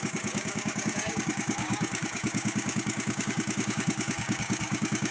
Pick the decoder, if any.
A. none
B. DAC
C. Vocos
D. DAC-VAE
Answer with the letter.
B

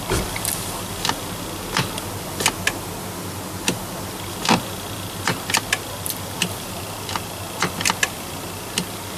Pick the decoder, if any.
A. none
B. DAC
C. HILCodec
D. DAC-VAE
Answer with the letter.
A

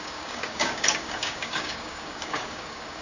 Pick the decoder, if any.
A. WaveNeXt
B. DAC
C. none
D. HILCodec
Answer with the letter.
B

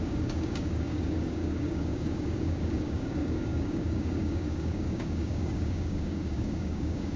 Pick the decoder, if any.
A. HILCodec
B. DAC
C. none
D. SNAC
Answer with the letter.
B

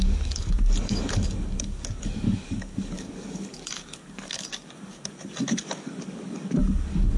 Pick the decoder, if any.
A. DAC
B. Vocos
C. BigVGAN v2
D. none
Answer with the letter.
A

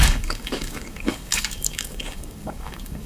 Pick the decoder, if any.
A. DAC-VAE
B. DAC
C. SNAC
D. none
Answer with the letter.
B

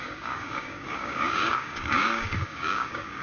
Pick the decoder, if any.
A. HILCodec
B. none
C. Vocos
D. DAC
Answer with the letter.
D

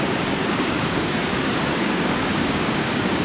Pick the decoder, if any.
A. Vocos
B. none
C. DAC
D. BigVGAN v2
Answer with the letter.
C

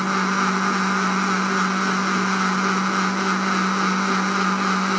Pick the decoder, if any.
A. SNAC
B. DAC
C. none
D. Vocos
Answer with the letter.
C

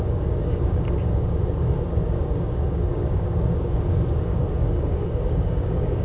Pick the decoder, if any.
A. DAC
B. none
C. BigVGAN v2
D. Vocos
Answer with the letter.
A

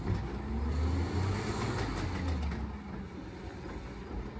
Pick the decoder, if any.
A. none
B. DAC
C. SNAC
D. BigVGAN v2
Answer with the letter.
A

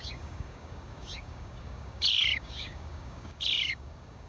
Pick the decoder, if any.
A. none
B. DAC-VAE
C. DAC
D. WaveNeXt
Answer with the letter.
C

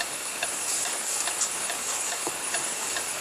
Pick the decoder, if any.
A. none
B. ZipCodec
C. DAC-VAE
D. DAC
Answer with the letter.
D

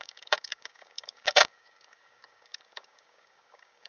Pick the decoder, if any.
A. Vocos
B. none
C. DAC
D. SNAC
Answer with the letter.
C